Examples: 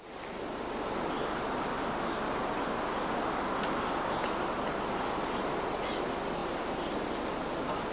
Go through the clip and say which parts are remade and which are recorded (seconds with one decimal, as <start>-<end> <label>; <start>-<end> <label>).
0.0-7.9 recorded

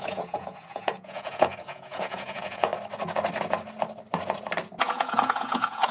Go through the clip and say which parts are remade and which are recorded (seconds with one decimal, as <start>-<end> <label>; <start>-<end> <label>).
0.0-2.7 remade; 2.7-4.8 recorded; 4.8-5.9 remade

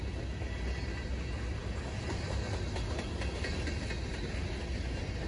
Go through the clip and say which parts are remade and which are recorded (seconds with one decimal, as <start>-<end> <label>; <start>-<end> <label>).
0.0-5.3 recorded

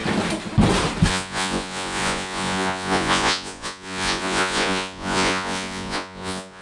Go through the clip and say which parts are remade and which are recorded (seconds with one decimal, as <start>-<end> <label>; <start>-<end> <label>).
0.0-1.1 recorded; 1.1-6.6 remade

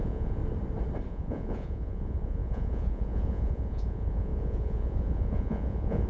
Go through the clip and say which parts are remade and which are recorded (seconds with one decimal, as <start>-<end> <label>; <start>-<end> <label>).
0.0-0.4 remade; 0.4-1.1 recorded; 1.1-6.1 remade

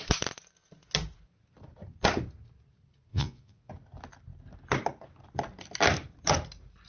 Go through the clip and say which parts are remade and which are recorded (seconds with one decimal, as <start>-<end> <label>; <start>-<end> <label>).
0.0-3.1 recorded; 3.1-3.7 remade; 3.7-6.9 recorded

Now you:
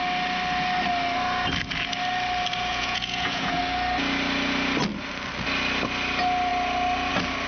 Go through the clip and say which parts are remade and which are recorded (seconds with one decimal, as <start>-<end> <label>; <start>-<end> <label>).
0.0-2.7 recorded; 2.7-3.6 remade; 3.6-7.5 recorded

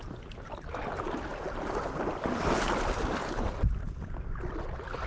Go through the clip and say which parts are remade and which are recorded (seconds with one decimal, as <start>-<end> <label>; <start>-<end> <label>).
0.0-5.1 recorded